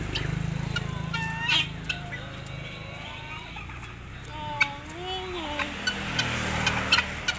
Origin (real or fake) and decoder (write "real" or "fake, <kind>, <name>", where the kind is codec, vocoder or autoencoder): real